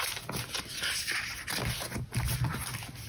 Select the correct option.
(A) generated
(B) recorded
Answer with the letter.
B